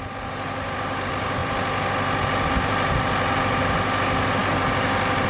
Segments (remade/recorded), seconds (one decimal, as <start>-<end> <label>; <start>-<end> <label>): 0.0-5.3 recorded